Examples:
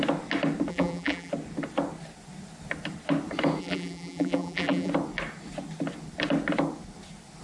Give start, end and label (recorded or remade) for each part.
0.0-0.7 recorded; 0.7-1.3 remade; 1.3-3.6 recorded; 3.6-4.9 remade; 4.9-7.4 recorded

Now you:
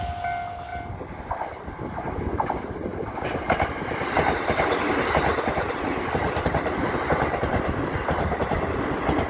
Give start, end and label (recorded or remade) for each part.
0.0-9.3 recorded

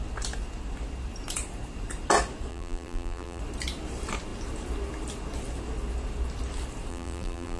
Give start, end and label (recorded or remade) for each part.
0.0-2.5 recorded; 2.5-3.4 remade; 3.4-6.9 recorded; 6.9-7.6 remade

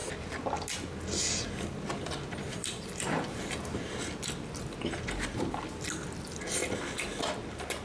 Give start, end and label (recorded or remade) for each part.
0.0-2.5 recorded; 2.5-4.1 remade; 4.1-7.8 recorded

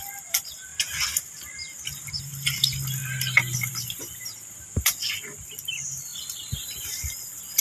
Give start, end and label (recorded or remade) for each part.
0.0-0.7 remade; 0.7-2.2 recorded; 2.2-6.1 remade; 6.1-6.6 recorded; 6.6-7.6 remade

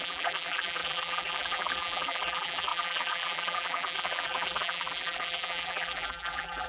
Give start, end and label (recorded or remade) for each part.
0.0-6.7 remade